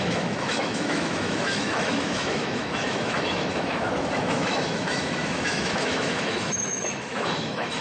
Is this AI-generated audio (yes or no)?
yes